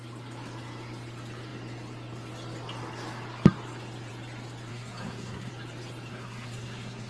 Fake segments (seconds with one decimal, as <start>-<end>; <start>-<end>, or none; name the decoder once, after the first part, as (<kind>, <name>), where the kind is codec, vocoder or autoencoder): 4.7-5.5 (codec, SNAC); 6.1-7.1